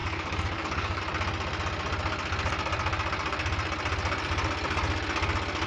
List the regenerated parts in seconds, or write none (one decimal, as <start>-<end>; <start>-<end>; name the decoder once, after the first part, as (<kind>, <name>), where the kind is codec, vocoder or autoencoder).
0.0-1.0 (codec, DAC)